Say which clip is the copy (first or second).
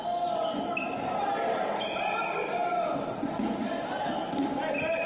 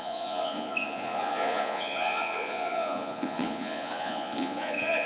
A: second